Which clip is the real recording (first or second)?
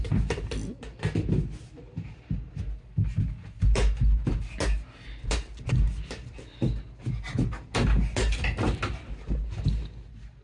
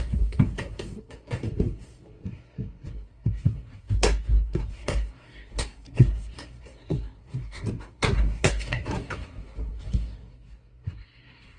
first